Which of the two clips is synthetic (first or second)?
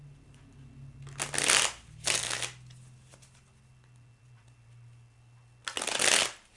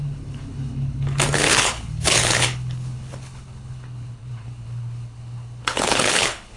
second